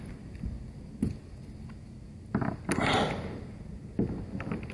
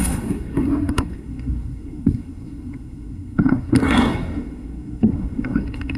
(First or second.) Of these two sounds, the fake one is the second